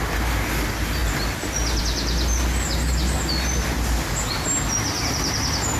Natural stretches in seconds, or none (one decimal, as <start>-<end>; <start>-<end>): 0.0-5.8